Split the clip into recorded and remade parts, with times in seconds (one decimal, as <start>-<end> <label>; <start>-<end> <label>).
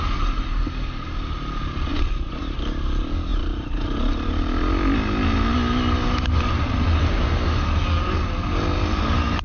0.0-1.9 recorded; 1.9-2.4 remade; 2.4-9.4 recorded